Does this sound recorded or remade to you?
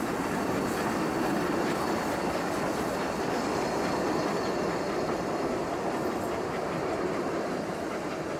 recorded